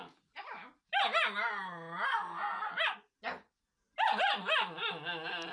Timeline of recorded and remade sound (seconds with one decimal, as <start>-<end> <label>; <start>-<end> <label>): 0.0-2.1 recorded; 2.1-2.7 remade; 2.7-5.5 recorded